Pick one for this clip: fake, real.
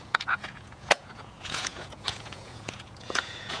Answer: fake